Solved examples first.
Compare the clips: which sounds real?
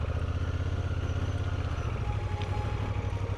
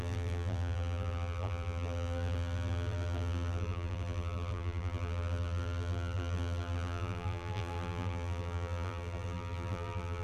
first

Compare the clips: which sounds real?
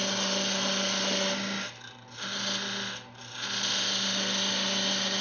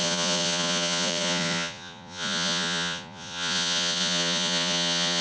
first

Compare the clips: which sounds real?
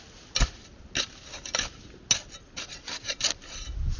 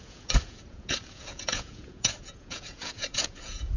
first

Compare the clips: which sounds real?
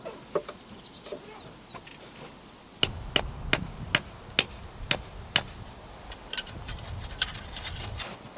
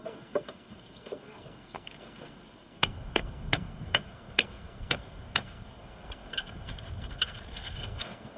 first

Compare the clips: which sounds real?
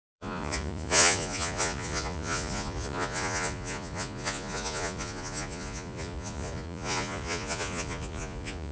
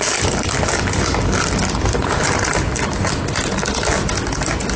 second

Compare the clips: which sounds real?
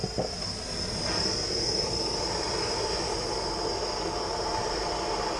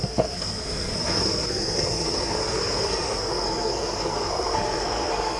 first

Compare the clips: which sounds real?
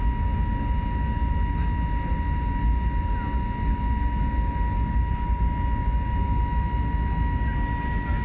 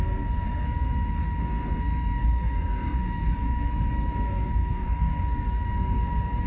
first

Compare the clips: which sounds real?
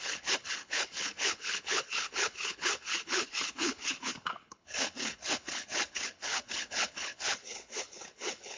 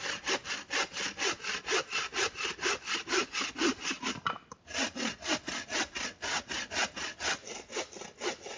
second